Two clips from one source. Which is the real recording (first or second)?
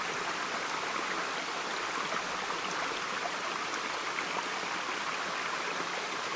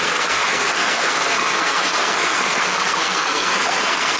first